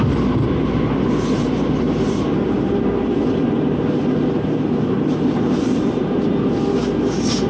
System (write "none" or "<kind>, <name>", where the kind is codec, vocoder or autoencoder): none